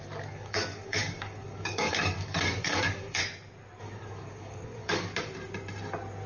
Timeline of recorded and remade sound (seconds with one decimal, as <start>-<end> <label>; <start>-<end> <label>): 0.0-3.2 remade; 3.2-3.8 recorded; 3.8-5.1 remade; 5.1-6.3 recorded